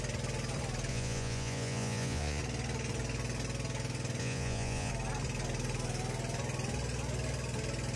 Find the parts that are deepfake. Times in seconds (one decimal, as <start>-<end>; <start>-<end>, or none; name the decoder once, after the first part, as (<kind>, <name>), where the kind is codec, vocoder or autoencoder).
0.9-2.4 (vocoder, Vocos); 4.2-4.9